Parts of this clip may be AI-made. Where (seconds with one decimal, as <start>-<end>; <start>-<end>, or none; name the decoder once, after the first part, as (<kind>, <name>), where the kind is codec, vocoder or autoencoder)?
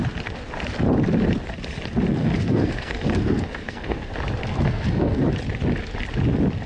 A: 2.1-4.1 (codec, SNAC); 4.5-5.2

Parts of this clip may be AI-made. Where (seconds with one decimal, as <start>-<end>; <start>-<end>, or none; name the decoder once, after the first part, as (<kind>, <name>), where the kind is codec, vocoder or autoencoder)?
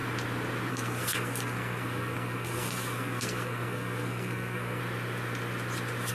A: 0.7-4.8 (codec, SNAC)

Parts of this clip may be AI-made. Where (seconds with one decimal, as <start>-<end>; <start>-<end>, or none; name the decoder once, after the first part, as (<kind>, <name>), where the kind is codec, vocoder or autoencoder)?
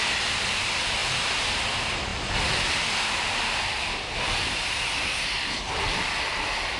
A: none